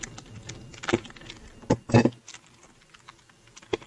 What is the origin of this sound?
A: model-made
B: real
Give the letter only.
B